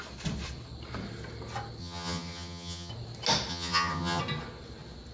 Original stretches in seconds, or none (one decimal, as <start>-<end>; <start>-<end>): 0.0-1.8; 2.9-3.5; 4.2-5.1